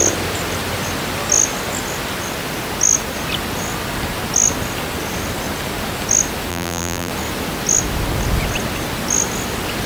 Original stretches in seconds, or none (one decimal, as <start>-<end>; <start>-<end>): 0.0-6.5; 7.1-9.9